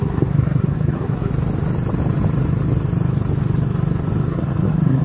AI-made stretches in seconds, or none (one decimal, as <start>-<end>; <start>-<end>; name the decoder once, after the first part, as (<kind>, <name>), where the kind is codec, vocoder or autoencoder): 0.0-1.3 (codec, SNAC); 4.3-5.0